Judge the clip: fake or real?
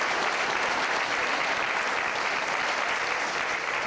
real